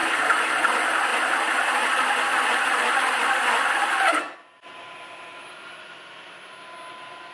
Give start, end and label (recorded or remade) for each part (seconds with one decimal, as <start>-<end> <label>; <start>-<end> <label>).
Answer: 0.0-0.7 remade; 0.7-7.3 recorded